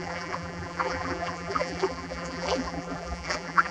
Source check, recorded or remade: remade